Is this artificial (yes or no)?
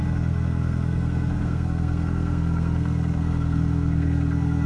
yes